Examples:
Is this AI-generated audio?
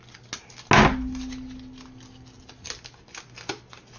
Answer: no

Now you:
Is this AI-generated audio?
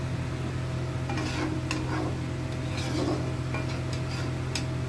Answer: no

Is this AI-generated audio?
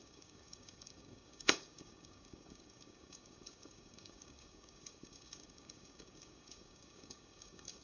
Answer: yes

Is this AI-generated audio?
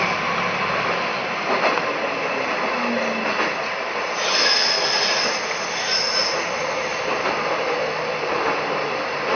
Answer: no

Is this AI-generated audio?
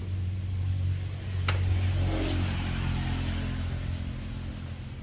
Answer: no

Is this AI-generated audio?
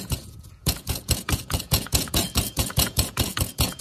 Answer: yes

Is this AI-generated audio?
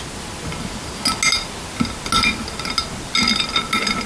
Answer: no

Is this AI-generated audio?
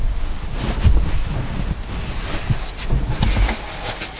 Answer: no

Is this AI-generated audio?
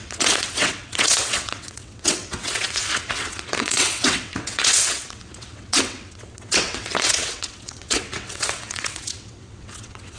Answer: yes